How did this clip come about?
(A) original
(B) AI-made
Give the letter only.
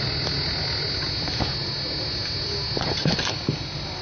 A